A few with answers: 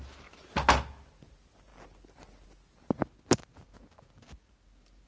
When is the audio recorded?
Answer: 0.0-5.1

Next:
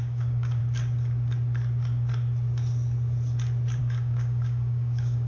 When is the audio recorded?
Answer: 0.6-3.8

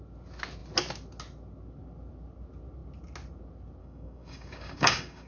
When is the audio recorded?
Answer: 0.0-3.8

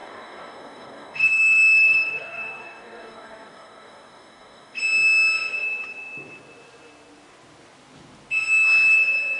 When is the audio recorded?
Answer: 4.8-9.4

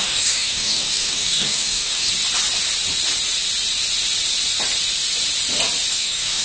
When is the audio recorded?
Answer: 2.1-5.9

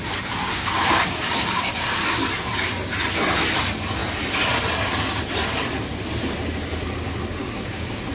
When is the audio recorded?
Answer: 0.0-0.4; 2.0-7.4

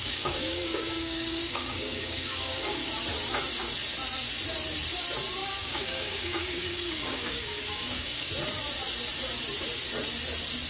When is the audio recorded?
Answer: 2.9-5.4; 8.3-10.7

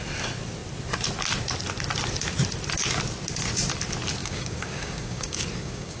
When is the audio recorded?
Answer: 0.0-4.2